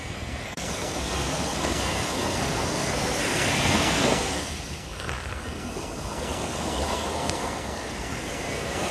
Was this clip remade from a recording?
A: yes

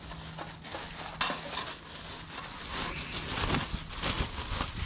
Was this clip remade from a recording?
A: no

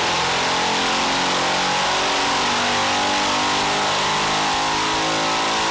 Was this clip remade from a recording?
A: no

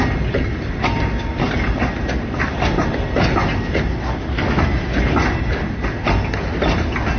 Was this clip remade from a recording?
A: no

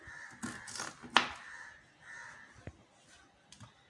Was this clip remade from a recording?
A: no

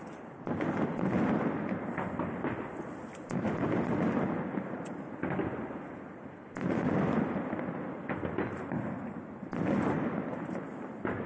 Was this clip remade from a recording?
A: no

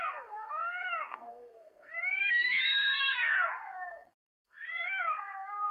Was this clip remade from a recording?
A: yes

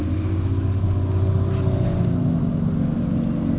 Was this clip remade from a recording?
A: no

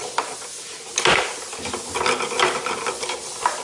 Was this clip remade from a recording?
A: no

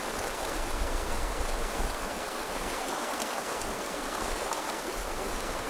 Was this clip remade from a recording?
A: yes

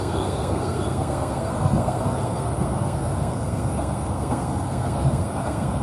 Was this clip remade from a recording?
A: yes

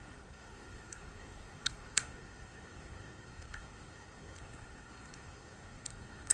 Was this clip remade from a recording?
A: yes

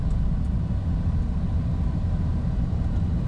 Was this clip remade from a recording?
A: no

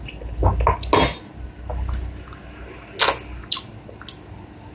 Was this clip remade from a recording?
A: no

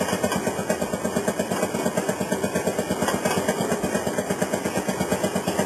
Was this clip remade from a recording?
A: no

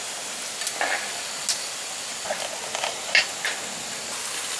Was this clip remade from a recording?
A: no